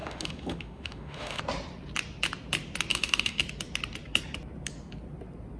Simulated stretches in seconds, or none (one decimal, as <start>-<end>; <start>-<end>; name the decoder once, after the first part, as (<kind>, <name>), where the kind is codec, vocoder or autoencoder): 0.0-1.4 (autoencoder, DAC-VAE); 2.9-3.4